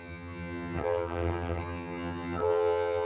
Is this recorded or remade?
remade